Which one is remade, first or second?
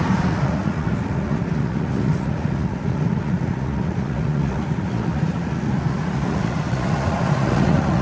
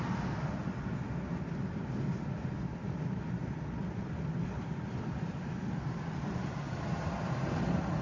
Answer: first